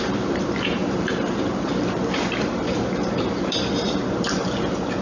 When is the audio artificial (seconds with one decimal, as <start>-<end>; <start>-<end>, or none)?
0.0-5.0